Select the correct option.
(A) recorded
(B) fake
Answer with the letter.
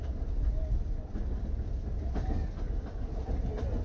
A